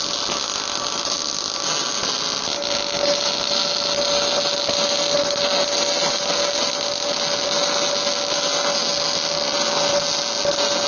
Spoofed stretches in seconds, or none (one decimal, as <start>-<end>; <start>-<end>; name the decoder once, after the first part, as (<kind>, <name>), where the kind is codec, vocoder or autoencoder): none